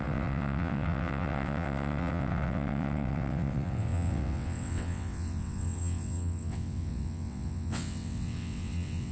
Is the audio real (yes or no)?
no